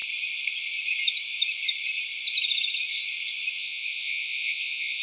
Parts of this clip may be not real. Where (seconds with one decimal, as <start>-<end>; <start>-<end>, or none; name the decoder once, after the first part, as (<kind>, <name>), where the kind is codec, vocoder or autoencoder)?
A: 3.6-5.0 (vocoder, Vocos)